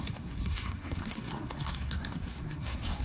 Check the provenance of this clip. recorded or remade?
remade